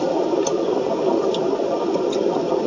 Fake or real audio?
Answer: real